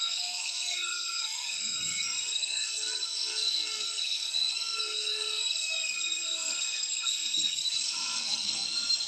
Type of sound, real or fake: fake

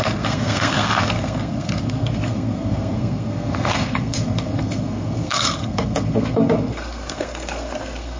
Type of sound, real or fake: fake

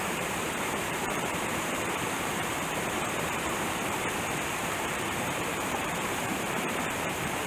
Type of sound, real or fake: fake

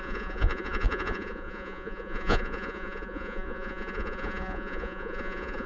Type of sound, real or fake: fake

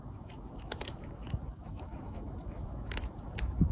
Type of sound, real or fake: fake